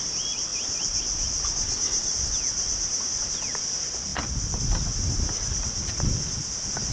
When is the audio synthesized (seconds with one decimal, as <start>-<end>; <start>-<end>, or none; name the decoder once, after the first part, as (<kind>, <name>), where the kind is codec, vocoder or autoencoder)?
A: none

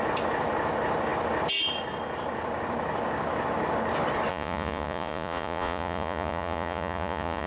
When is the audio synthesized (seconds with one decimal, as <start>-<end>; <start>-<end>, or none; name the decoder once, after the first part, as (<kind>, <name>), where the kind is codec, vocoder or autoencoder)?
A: 4.3-7.5 (vocoder, Vocos)

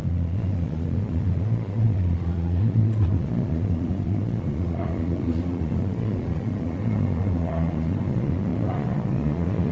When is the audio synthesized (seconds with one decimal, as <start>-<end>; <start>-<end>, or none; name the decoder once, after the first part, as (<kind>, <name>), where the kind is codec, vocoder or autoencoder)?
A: 0.0-9.7 (vocoder, Vocos)